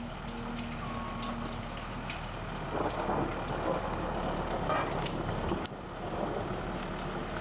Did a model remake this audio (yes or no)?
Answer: no